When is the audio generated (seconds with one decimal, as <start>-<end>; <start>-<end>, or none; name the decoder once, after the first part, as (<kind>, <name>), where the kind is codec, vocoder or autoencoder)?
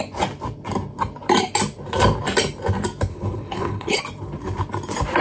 3.1-4.0 (codec, HILCodec)